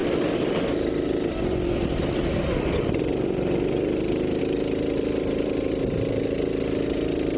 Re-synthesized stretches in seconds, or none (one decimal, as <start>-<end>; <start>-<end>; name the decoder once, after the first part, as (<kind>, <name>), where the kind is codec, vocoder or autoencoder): none